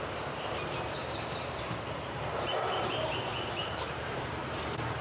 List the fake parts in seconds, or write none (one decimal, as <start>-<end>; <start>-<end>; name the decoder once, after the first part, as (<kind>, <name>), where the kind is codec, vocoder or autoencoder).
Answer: 0.0-2.5 (vocoder, BigVGAN v2); 3.9-5.0